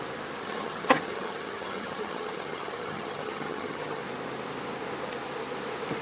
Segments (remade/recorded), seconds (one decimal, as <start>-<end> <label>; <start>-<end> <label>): 0.0-0.4 recorded; 0.4-4.0 remade; 4.0-6.0 recorded